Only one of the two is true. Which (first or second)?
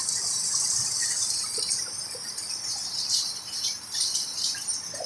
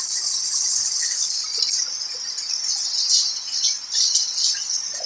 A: second